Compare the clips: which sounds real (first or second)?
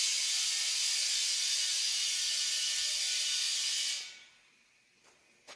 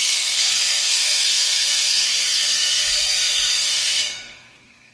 first